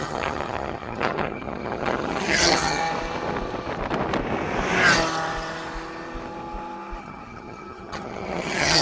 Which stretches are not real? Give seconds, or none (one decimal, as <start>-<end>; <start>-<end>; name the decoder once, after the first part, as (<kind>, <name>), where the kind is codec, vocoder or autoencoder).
0.0-2.8 (vocoder, HiFi-GAN); 7.0-8.8